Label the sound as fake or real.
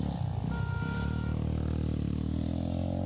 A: real